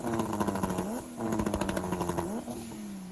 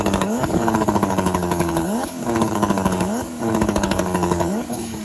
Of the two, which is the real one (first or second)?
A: first